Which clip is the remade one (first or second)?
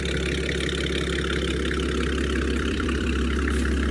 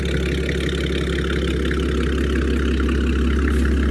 first